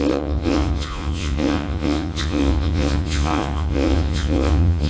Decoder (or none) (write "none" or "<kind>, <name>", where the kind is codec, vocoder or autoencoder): vocoder, Vocos